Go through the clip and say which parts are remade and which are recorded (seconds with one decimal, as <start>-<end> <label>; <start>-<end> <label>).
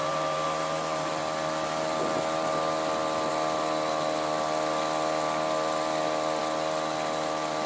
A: 0.0-1.2 remade; 1.2-7.7 recorded